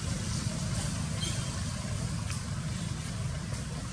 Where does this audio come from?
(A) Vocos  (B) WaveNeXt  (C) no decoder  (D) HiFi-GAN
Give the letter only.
C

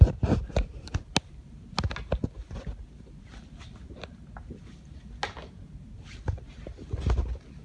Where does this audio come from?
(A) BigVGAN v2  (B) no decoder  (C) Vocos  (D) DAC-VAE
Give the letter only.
B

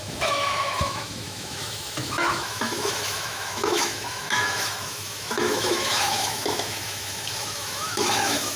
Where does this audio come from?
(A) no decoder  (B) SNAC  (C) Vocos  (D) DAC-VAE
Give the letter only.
D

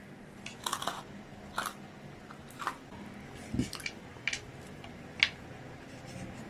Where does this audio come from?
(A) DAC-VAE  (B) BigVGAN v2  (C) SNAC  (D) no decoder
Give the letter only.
D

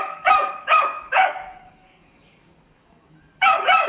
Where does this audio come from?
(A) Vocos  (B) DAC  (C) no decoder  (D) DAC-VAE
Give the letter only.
B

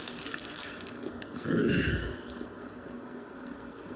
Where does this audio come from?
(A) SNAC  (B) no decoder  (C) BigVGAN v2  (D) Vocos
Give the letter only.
A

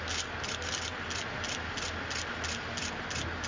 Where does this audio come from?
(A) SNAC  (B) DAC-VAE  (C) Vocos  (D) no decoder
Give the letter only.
D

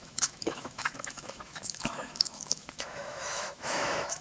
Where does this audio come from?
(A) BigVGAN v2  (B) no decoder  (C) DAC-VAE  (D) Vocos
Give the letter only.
C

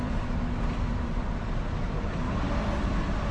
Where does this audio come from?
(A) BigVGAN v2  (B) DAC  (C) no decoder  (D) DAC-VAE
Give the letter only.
A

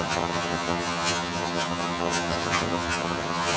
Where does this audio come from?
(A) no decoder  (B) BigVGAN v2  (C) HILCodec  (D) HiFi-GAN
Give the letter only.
D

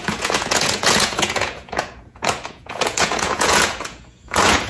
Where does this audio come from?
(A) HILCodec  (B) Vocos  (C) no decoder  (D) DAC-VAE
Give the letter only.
B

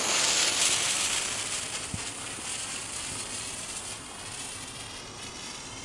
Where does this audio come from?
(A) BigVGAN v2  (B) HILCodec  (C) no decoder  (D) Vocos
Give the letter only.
C